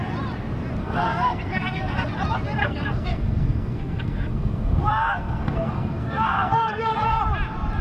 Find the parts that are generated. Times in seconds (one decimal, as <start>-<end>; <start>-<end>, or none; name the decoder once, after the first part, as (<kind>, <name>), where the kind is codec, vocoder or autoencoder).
0.8-2.1 (codec, SNAC); 2.6-7.2